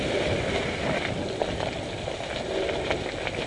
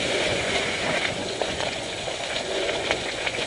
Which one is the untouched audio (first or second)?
first